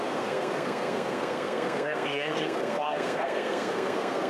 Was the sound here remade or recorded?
remade